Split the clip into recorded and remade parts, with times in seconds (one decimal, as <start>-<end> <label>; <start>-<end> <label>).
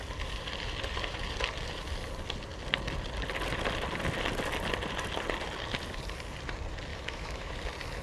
0.0-6.9 recorded; 6.9-7.5 remade; 7.5-8.0 recorded